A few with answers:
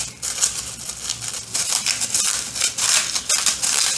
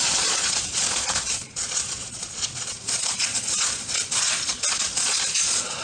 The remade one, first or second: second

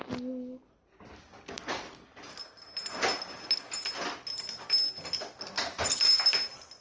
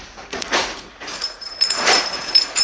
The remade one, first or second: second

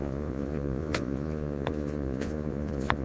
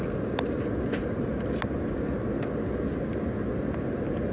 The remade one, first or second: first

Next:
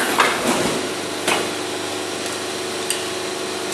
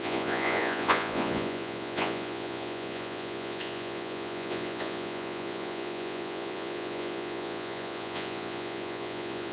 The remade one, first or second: second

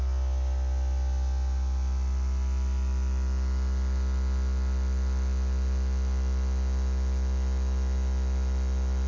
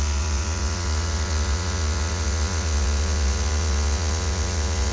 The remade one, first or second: second